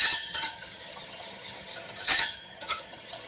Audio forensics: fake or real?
fake